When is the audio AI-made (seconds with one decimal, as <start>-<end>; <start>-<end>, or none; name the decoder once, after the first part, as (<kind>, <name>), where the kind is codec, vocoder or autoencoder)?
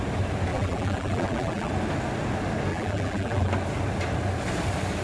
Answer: 0.5-1.7 (vocoder, BigVGAN v2); 2.7-3.5